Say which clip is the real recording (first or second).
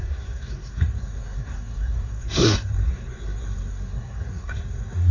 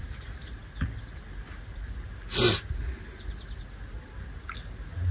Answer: second